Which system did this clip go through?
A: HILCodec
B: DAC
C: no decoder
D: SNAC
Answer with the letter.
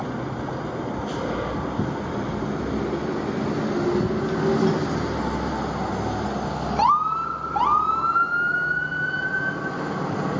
C